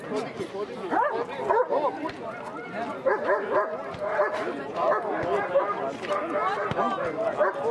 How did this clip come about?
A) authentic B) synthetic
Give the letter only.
A